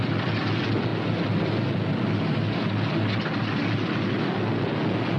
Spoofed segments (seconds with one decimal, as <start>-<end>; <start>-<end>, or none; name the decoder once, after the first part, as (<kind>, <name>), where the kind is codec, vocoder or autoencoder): none

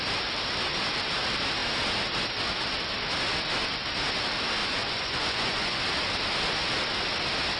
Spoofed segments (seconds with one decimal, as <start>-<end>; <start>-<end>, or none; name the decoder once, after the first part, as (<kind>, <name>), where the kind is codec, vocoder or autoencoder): 4.6-5.8 (vocoder, Vocos)

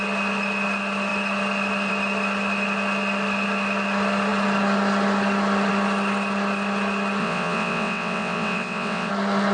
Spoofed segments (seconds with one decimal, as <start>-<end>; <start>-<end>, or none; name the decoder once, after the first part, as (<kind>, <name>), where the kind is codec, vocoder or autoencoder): 7.2-9.1 (vocoder, WaveNeXt)

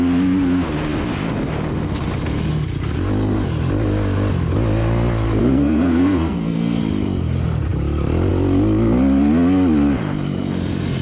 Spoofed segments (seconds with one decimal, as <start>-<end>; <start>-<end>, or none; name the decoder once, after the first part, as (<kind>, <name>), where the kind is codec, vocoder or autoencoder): 5.4-6.8 (codec, SNAC)

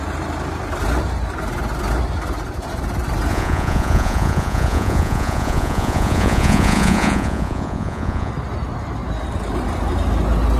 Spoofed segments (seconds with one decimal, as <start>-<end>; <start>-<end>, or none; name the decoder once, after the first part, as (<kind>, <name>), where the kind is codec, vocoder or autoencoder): 3.3-8.3 (vocoder, Vocos)